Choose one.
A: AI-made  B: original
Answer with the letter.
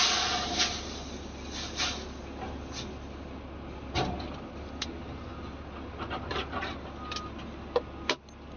B